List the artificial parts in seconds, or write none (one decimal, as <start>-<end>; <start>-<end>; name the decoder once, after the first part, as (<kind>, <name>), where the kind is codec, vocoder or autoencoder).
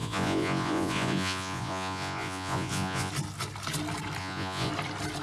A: 0.0-3.1 (vocoder, Vocos); 4.2-4.7